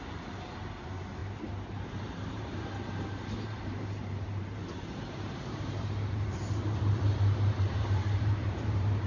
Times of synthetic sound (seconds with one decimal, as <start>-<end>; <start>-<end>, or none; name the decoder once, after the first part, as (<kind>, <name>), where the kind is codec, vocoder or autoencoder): 0.0-9.1 (vocoder, BigVGAN v2)